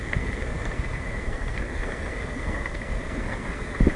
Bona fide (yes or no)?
no